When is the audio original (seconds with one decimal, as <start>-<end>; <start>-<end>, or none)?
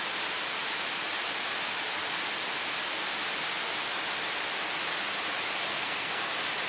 0.0-5.7; 6.3-6.7